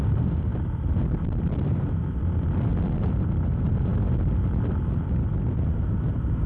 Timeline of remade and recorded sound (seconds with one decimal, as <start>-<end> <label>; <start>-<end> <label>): 0.0-6.5 recorded

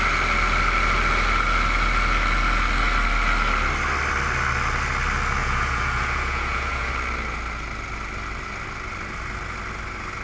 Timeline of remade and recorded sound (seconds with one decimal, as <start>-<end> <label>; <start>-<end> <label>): 0.0-5.4 recorded; 5.4-6.9 remade; 6.9-10.2 recorded

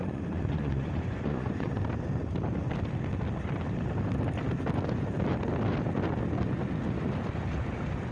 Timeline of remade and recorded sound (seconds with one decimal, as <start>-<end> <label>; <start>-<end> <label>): 0.0-1.8 remade; 1.8-8.1 recorded

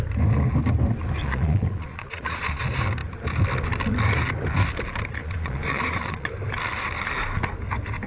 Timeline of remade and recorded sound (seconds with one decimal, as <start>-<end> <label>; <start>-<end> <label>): 0.0-1.2 recorded; 1.2-2.6 remade; 2.6-5.2 recorded; 5.2-6.3 remade; 6.3-8.1 recorded